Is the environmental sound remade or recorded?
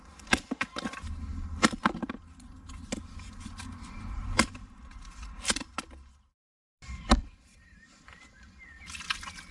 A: recorded